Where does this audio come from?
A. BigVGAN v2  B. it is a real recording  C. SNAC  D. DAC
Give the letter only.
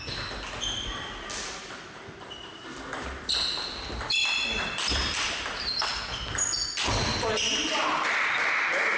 B